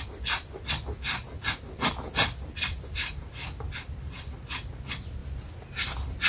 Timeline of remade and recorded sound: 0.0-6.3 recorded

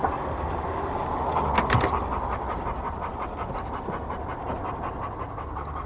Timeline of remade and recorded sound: 0.0-5.9 recorded

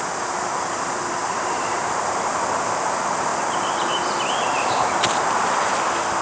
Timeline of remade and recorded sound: 0.0-1.2 recorded; 1.2-1.9 remade; 1.9-6.2 recorded